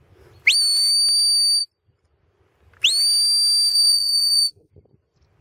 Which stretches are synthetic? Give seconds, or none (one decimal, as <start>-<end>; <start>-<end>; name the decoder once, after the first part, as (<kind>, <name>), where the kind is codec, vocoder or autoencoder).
3.7-4.7 (autoencoder, DAC-VAE)